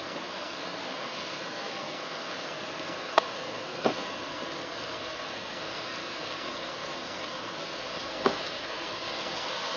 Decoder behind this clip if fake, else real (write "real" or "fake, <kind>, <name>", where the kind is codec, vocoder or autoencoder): fake, codec, SNAC